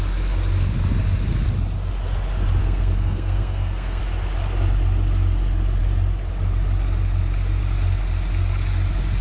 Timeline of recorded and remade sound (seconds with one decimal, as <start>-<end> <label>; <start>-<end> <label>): 0.0-2.6 recorded; 2.6-4.0 remade; 4.0-9.2 recorded